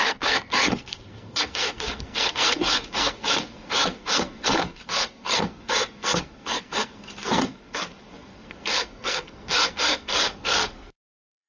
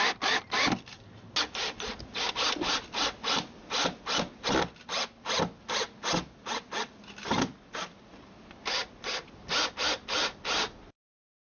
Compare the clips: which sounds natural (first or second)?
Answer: second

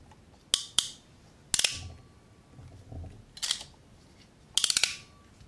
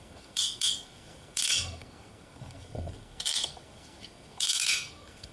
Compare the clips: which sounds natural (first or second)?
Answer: first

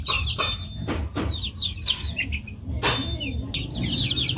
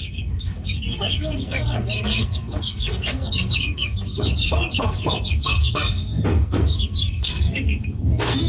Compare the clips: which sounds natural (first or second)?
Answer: first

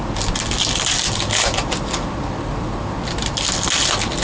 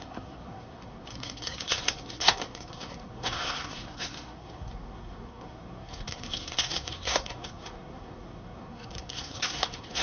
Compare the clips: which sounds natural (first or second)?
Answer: first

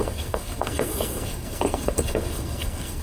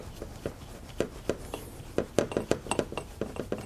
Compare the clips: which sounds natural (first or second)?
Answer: second